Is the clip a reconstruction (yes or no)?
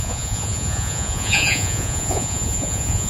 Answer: yes